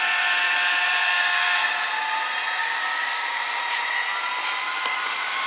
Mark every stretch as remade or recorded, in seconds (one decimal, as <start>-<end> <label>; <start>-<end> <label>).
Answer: 0.0-1.0 recorded; 1.0-1.6 remade; 1.6-2.6 recorded; 2.6-3.6 remade; 3.6-4.6 recorded; 4.6-5.5 remade